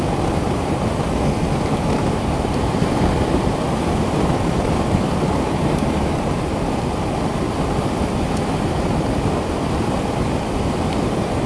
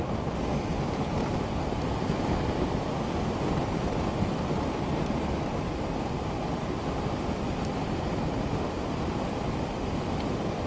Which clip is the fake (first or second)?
first